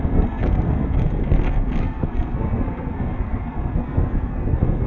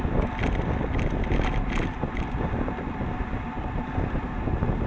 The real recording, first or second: second